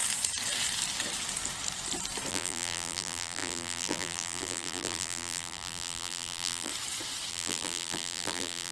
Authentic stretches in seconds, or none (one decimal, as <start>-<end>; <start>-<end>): 0.0-2.3; 6.7-7.3